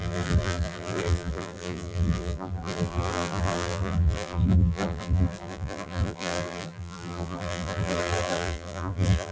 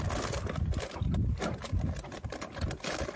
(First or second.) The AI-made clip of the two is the first